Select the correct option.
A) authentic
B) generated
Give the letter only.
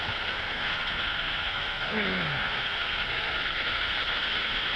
B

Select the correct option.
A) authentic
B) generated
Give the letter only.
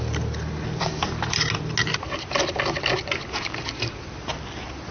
A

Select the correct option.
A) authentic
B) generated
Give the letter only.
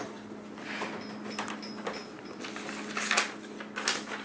A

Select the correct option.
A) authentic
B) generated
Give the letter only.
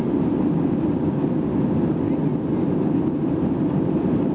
A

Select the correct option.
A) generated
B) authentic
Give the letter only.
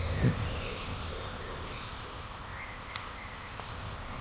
A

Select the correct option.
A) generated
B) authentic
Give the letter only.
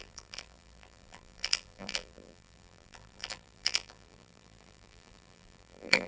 A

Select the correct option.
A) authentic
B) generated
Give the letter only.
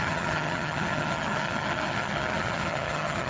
B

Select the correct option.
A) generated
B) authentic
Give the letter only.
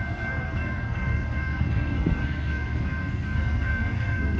A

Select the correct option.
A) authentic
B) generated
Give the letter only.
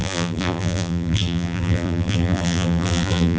B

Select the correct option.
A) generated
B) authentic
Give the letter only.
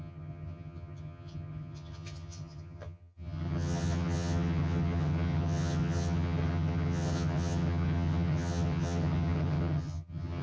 A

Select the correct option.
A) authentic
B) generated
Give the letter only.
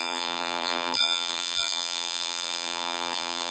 B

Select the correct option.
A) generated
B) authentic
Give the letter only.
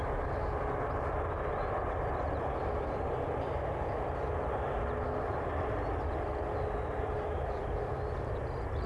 B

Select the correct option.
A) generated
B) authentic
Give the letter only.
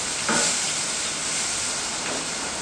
B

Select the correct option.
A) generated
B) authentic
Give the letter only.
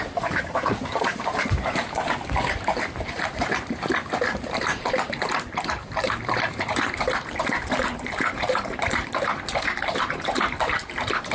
A